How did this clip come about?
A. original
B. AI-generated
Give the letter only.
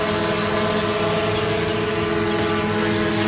A